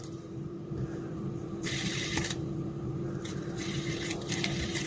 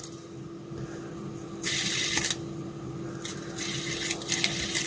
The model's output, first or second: first